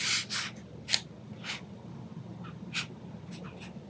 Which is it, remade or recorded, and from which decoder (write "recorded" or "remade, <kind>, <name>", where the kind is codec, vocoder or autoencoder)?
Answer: recorded